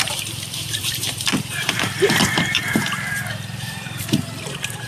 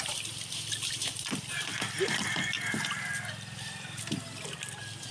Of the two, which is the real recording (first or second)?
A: second